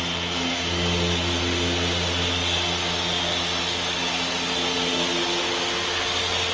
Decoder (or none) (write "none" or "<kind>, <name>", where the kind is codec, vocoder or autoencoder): none